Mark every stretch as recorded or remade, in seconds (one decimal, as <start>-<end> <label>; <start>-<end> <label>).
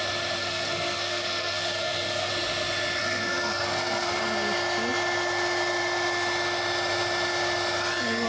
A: 0.0-0.4 recorded; 0.4-2.3 remade; 2.3-3.0 recorded; 3.0-4.2 remade; 4.2-8.3 recorded